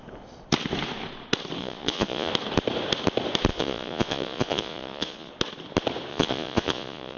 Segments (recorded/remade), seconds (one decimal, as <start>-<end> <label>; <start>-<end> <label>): 0.0-1.6 recorded; 1.6-2.3 remade; 2.3-3.5 recorded; 3.5-5.3 remade; 5.3-6.1 recorded; 6.1-7.2 remade